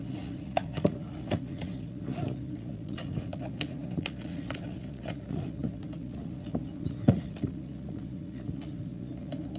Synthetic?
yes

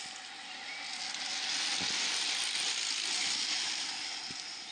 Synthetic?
no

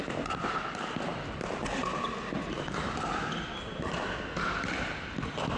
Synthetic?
no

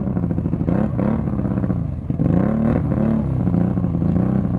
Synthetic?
no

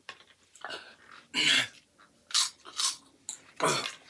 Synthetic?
no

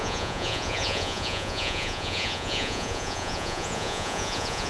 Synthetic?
yes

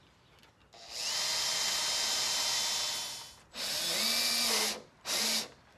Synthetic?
no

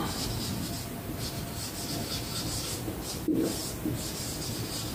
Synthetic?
no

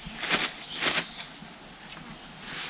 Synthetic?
no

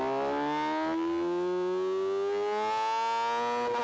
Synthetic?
no